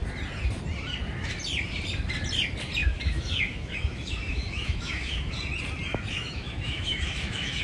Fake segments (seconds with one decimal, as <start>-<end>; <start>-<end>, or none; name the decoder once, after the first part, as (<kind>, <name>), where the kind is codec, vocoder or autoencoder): 2.8-5.3 (autoencoder, DAC-VAE); 5.9-7.6